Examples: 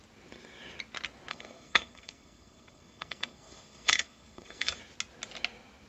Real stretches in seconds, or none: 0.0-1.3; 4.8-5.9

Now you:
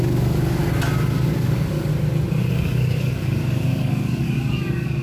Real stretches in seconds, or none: 0.6-1.1; 1.9-2.5

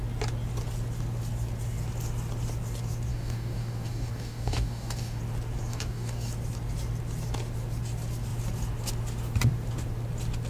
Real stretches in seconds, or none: 0.0-3.1; 5.2-5.7; 6.3-10.5

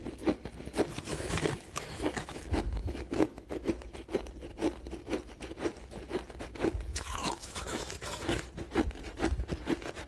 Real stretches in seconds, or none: 0.0-1.1; 2.4-2.8; 3.7-6.9; 8.4-10.1

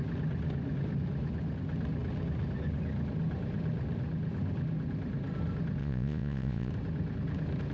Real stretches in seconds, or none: 0.0-5.8; 6.7-7.7